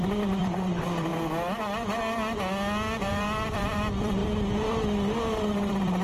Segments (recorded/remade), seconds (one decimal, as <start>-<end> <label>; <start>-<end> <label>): 0.0-1.1 remade; 1.1-3.1 recorded; 3.1-4.2 remade; 4.2-5.2 recorded; 5.2-6.0 remade